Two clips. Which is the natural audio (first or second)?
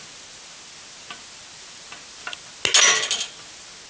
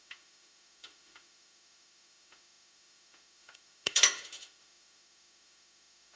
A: first